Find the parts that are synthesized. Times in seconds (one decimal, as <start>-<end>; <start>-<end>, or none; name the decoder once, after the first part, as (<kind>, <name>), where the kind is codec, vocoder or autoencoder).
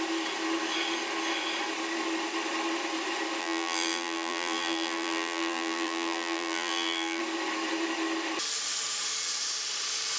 3.4-7.2 (vocoder, BigVGAN v2)